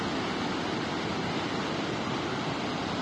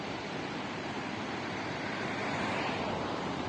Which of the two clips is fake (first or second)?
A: second